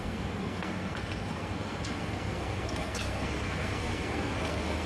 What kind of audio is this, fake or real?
fake